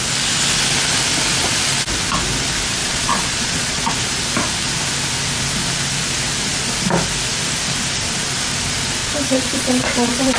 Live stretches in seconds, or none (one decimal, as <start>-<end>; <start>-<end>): 0.0-2.8; 3.9-9.0